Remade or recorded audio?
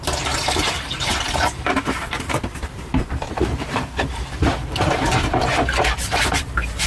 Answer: remade